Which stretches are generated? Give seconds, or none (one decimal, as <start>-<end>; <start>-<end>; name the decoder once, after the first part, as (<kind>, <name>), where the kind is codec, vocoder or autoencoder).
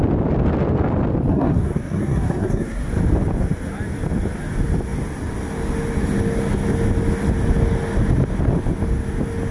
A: 1.3-2.9 (codec, SNAC)